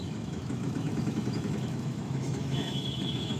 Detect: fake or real fake